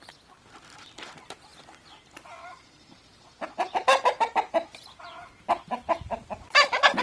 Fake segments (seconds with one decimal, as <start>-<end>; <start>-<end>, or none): none